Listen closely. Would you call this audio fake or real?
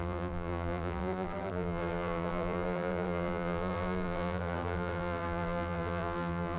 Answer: fake